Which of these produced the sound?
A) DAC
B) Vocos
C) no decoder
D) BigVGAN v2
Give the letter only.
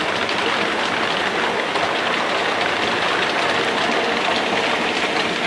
C